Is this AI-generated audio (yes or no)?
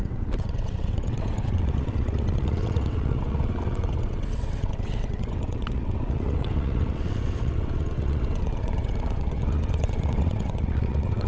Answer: yes